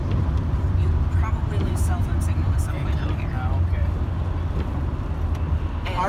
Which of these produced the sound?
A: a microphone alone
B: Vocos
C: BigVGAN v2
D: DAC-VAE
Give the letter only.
A